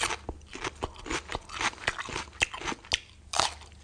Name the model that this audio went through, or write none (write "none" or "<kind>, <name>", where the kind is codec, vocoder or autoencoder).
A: none